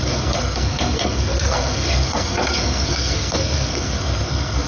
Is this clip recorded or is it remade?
remade